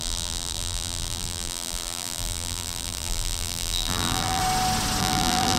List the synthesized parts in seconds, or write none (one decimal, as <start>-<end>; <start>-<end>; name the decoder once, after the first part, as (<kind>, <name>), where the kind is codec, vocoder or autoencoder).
0.0-4.4 (vocoder, BigVGAN v2); 5.0-5.6